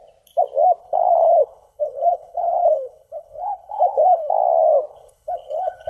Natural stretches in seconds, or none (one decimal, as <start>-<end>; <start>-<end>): 0.0-0.8; 4.3-4.9

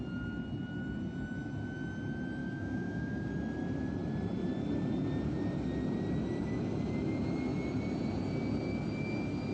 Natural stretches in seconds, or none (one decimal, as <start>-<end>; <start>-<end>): 0.0-2.4; 3.3-9.5